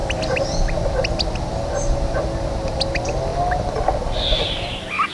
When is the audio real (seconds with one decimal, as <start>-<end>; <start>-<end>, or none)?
0.0-5.1